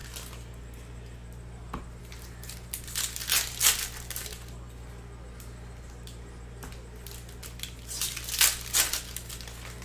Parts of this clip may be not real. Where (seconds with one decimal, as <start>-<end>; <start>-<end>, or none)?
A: none